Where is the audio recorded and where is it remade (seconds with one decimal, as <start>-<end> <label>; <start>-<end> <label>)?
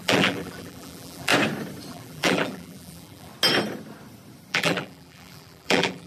0.0-1.3 remade; 1.3-1.9 recorded; 1.9-3.3 remade; 3.3-4.5 recorded; 4.5-6.1 remade